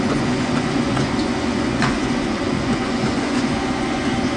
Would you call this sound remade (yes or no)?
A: yes